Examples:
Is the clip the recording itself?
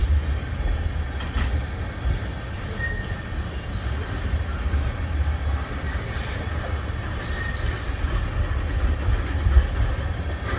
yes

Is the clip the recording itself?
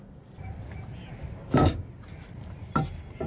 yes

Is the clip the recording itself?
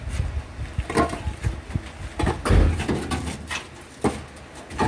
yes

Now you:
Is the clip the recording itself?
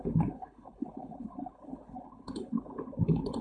no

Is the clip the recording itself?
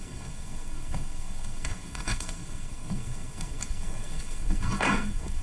no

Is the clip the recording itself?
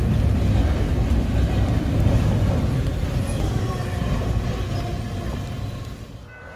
yes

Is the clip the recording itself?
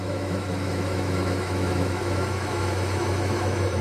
no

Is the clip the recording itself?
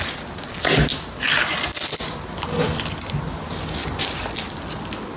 yes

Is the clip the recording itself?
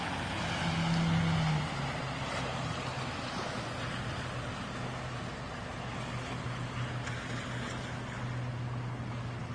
yes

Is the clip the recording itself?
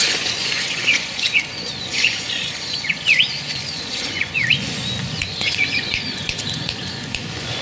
no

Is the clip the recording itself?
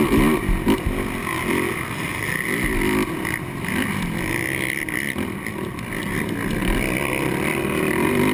yes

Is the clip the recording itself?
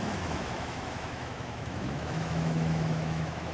no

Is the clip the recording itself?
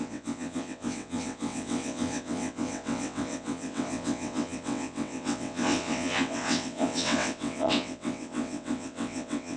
no